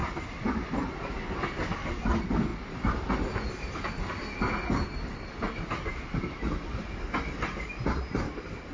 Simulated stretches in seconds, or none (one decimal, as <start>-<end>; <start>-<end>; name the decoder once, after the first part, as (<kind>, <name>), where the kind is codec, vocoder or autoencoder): 0.0-1.2 (vocoder, BigVGAN v2); 4.9-6.6